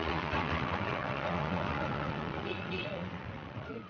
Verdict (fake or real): fake